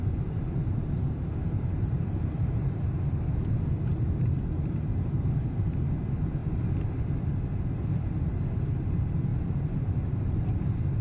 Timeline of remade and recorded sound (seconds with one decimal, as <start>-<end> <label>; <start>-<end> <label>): 0.0-1.4 recorded; 1.4-2.9 remade; 2.9-3.9 recorded; 3.9-5.8 remade; 5.8-9.3 recorded; 9.3-9.8 remade; 9.8-11.0 recorded